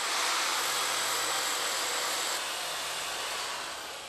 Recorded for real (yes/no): yes